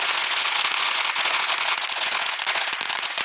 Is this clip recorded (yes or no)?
no